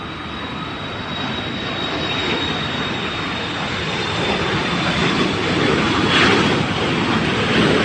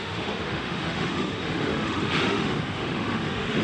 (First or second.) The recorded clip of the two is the first